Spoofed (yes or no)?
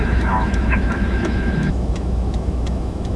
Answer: yes